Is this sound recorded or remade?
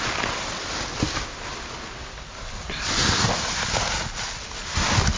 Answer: recorded